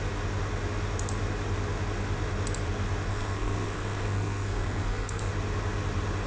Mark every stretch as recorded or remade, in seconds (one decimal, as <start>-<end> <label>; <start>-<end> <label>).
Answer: 0.0-3.1 recorded; 3.1-5.3 remade; 5.3-6.3 recorded